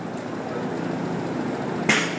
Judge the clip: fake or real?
real